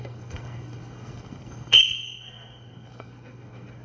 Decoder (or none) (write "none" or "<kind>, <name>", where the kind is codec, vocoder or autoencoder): codec, SNAC